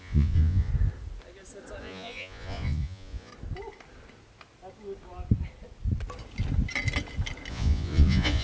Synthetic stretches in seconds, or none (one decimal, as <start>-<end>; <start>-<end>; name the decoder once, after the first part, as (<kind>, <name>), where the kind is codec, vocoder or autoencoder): 0.0-0.7 (vocoder, Vocos); 1.8-3.3; 7.5-8.4